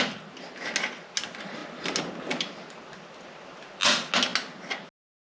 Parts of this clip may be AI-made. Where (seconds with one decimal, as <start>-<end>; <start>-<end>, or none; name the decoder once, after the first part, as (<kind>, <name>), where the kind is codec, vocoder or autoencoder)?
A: none